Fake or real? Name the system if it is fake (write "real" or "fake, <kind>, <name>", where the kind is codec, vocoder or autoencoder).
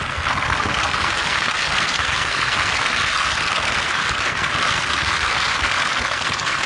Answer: fake, codec, SNAC